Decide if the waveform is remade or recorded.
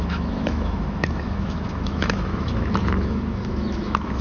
remade